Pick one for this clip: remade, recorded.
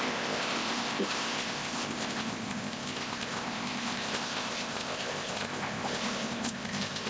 remade